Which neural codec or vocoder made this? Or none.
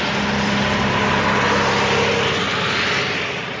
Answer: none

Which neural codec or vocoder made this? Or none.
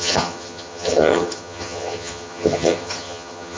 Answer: vocoder, HiFi-GAN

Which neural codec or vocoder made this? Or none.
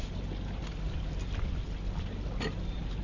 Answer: none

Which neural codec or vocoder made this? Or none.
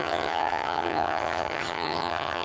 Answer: vocoder, HiFi-GAN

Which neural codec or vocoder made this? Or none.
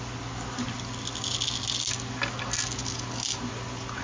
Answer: none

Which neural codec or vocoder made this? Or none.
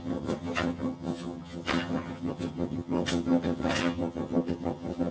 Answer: vocoder, HiFi-GAN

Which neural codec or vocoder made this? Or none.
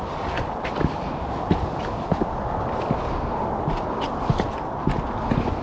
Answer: none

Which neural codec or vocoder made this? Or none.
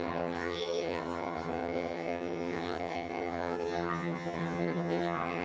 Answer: vocoder, HiFi-GAN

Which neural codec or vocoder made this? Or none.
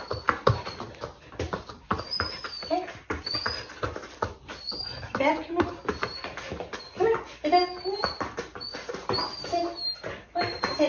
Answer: none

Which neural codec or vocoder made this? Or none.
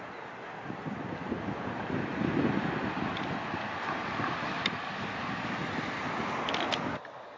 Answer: none